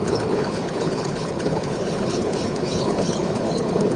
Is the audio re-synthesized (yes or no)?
yes